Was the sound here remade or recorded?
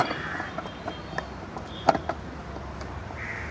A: recorded